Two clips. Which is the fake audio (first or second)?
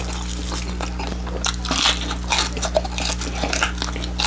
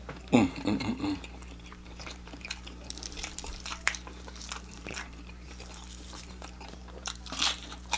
second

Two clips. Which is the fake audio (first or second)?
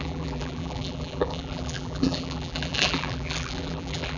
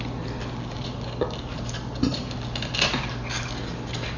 first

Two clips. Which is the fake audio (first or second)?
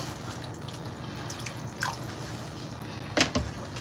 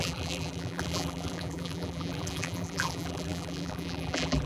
second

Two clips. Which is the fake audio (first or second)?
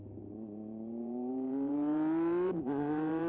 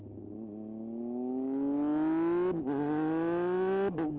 first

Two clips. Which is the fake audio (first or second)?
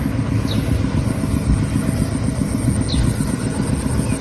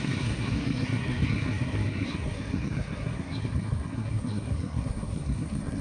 second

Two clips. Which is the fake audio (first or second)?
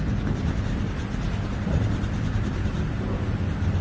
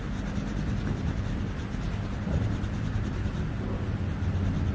first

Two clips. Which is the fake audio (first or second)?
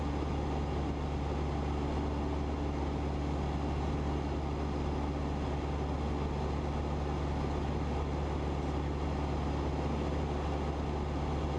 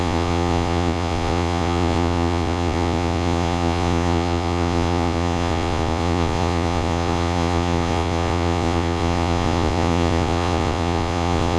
second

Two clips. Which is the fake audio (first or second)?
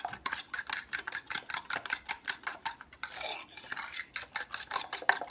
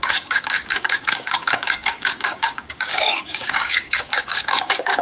second